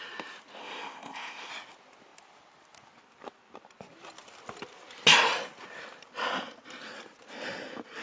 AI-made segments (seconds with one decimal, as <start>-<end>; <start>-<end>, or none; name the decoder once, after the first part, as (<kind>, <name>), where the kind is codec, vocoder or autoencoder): 0.6-1.5 (codec, ZipCodec)